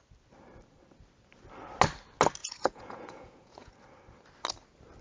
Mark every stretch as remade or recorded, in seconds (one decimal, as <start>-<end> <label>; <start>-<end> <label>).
0.0-2.4 recorded; 2.4-3.7 remade; 3.7-5.0 recorded